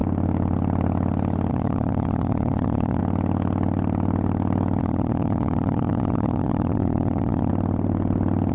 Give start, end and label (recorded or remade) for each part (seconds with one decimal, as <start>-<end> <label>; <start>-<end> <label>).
0.0-1.5 recorded; 1.5-3.0 remade; 3.0-4.8 recorded; 4.8-7.5 remade; 7.5-8.5 recorded